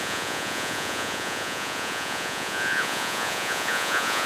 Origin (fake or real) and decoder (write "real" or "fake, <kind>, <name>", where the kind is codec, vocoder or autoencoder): fake, vocoder, Vocos